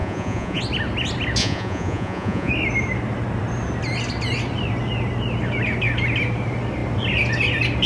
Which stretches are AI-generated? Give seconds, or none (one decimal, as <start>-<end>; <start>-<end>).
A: 0.0-0.6; 1.4-2.5